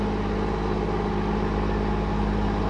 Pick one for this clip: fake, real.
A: real